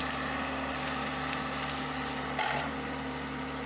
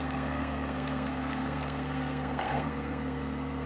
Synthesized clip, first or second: second